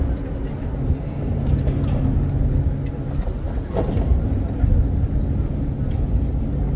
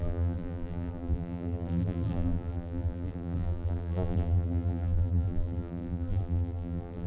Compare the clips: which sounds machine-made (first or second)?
second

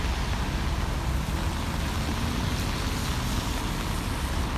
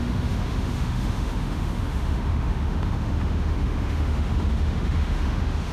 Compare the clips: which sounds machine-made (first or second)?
second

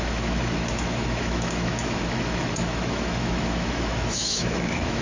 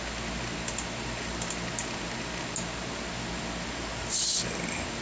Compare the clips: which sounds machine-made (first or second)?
first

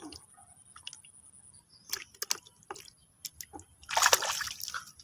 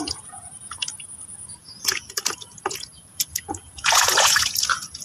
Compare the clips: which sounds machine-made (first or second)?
second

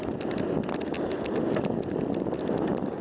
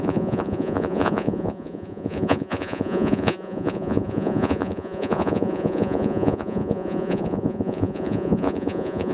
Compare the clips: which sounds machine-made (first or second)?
second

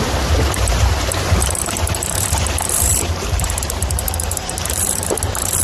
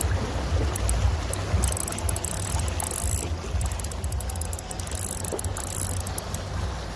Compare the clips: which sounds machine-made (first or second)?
first